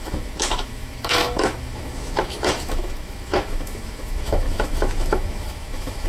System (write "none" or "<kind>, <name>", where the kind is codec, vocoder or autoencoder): autoencoder, DAC-VAE